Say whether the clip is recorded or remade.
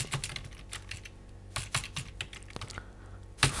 recorded